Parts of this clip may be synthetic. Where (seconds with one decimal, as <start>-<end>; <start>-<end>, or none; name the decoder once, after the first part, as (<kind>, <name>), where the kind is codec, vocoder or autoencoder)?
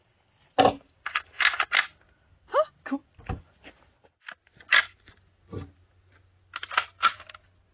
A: none